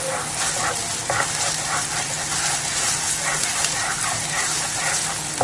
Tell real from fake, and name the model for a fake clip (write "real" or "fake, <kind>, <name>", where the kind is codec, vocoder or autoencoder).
real